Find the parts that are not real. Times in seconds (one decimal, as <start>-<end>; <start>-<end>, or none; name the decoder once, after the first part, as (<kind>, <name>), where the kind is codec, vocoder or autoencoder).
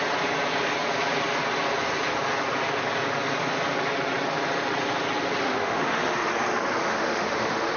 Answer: 5.4-6.3 (autoencoder, DAC-VAE); 6.8-7.8